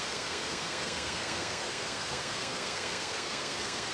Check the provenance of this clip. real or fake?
fake